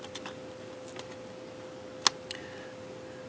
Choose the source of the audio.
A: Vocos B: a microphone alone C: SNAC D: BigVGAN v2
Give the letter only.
B